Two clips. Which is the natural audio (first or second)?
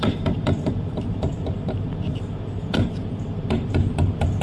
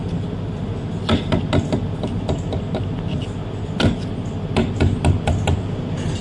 second